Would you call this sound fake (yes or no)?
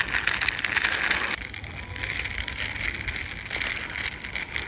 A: no